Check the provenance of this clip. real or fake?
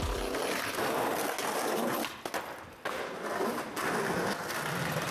real